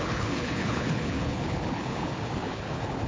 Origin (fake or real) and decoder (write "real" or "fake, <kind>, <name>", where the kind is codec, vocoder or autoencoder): fake, codec, HILCodec